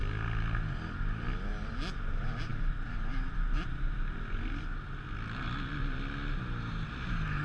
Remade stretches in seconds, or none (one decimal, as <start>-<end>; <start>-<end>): none